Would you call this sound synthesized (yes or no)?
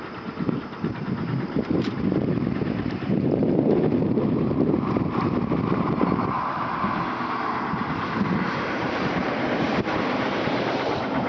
yes